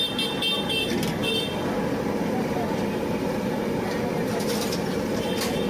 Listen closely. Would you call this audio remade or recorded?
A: recorded